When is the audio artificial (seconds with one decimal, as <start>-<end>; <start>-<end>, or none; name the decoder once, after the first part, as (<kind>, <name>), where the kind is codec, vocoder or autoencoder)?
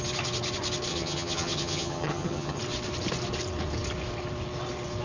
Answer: 0.9-2.6 (vocoder, HiFi-GAN)